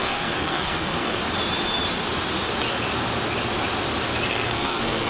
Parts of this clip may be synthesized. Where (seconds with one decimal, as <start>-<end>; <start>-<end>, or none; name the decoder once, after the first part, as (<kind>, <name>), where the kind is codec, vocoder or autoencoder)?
0.0-1.2 (codec, SNAC); 4.3-5.1